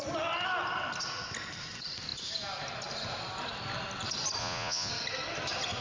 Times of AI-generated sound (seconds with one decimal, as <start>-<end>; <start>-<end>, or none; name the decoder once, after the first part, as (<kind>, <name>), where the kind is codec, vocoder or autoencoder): 4.4-4.9 (vocoder, Vocos)